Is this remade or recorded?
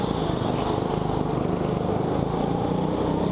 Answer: recorded